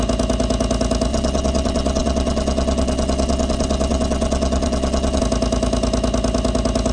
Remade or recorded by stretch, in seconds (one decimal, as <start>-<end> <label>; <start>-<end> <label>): 0.0-1.1 recorded; 1.1-5.2 remade; 5.2-6.9 recorded